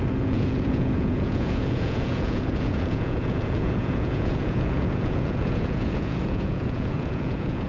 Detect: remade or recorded remade